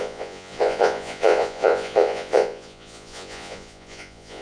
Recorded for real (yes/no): no